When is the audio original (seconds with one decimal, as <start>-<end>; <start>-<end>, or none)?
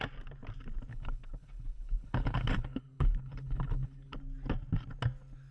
0.0-0.9; 4.2-5.5